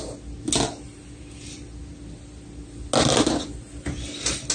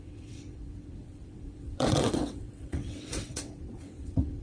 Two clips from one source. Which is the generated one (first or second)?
second